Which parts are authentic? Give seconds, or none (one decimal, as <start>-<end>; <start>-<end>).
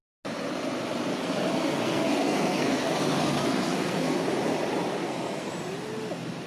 0.0-1.1; 4.2-4.9; 5.5-6.5